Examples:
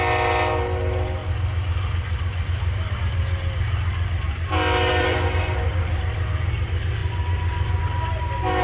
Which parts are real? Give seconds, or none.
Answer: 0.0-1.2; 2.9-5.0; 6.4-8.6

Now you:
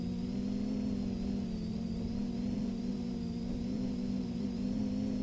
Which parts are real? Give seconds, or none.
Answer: 0.0-1.7; 4.8-5.2

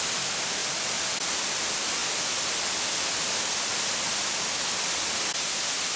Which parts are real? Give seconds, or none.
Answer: 0.0-6.0